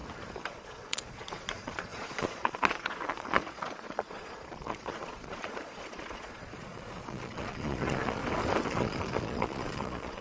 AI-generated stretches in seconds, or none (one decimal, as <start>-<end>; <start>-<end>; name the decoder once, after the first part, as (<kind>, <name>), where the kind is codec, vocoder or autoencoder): 0.5-8.2 (vocoder, Vocos); 8.7-10.2